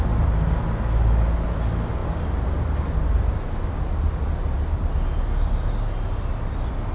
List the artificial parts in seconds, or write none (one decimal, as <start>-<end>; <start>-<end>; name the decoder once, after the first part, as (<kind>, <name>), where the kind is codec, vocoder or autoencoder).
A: none